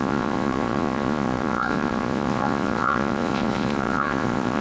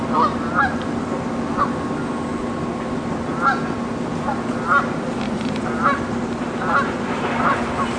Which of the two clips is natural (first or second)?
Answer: second